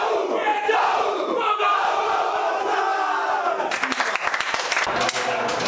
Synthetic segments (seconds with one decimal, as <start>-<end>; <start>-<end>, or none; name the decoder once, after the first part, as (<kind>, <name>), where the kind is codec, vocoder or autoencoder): 0.5-2.6 (vocoder, BigVGAN v2)